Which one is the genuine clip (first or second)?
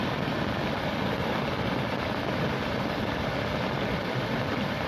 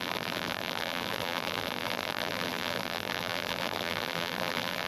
first